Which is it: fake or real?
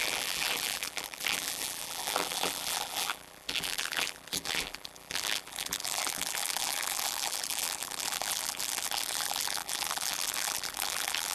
fake